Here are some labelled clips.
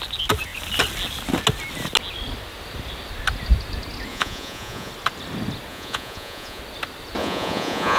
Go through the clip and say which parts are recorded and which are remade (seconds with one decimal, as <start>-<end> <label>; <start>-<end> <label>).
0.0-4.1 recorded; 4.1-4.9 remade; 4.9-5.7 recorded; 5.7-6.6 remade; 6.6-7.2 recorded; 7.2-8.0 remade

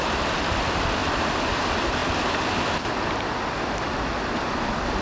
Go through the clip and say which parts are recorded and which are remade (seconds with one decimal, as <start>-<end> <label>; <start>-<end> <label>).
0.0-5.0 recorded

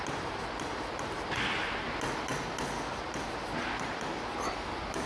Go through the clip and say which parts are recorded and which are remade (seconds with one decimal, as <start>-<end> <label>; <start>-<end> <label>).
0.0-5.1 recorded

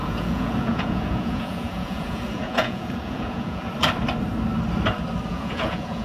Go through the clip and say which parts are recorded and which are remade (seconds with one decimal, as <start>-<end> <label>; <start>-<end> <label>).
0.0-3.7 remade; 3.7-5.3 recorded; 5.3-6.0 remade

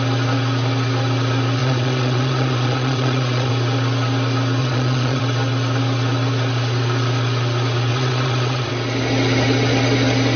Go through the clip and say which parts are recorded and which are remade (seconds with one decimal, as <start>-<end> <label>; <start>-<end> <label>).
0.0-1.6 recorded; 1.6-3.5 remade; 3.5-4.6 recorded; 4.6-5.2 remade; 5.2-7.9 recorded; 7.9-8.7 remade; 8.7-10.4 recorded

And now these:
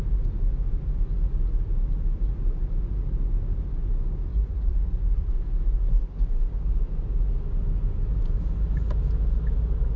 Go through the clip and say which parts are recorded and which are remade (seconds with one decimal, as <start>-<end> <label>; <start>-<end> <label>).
0.0-4.3 recorded; 4.3-5.3 remade; 5.3-10.0 recorded